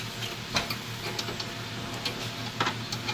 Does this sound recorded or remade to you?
recorded